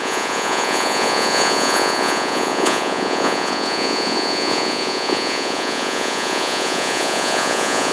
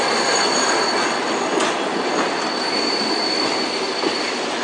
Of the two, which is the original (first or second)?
second